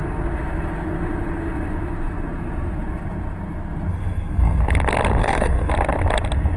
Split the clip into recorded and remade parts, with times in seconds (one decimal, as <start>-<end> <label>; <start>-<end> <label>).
0.0-3.9 recorded; 3.9-4.6 remade; 4.6-5.2 recorded; 5.2-5.7 remade; 5.7-6.6 recorded